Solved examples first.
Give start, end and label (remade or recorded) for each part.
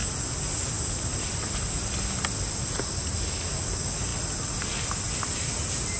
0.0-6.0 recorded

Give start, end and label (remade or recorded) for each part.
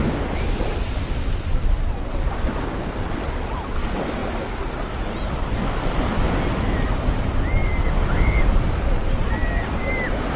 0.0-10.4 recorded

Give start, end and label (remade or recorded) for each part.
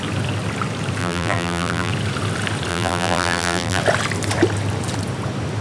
0.0-1.0 recorded; 1.0-1.9 remade; 1.9-2.7 recorded; 2.7-3.8 remade; 3.8-5.6 recorded